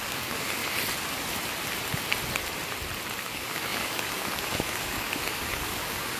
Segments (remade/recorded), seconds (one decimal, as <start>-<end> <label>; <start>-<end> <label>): 0.0-0.6 remade; 0.6-3.2 recorded; 3.2-6.2 remade